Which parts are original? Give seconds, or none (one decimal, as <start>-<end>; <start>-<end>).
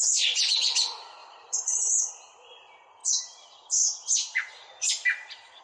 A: 0.0-1.2; 2.0-5.6